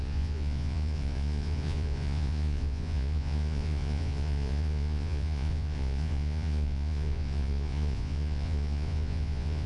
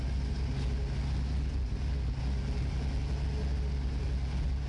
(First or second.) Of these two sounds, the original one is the second